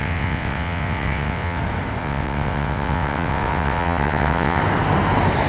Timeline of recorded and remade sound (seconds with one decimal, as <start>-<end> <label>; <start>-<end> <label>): 0.0-1.6 remade; 1.6-2.0 recorded; 2.0-4.6 remade; 4.6-5.5 recorded